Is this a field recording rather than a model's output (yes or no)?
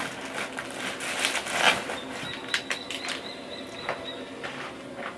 yes